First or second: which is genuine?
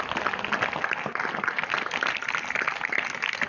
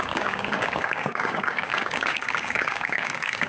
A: first